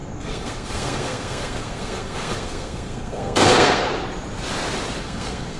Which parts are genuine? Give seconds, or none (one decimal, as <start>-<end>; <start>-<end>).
3.9-5.0